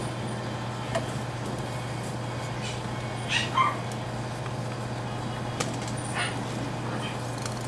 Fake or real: real